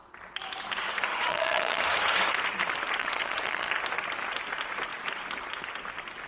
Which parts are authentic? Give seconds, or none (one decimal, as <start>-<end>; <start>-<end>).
0.0-1.1; 1.8-3.0; 3.7-6.3